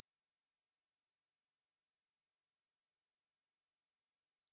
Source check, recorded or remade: recorded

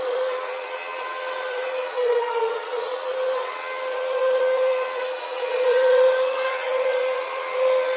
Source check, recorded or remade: remade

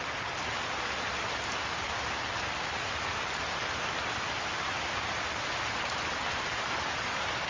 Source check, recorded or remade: recorded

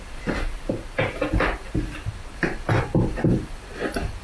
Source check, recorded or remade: recorded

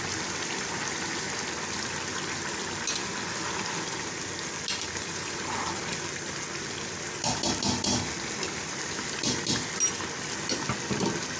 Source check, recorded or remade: recorded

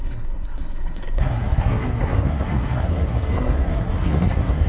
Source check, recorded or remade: remade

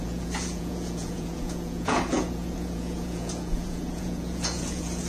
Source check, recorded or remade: remade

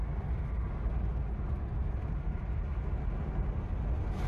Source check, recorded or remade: recorded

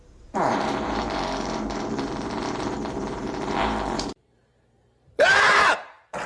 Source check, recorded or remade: remade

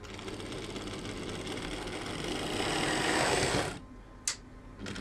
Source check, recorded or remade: recorded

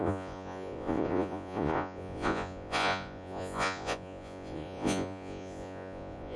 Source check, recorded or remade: remade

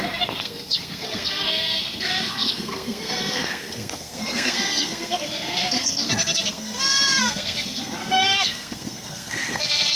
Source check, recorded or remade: remade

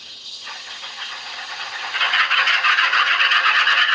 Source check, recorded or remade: remade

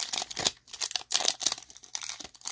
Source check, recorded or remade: recorded